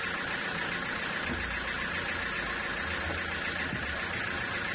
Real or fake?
real